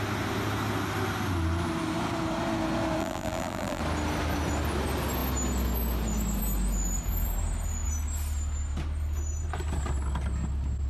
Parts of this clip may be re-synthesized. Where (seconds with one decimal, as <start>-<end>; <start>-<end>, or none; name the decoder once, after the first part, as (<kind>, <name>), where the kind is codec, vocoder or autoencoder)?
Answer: 3.0-3.8 (vocoder, BigVGAN v2)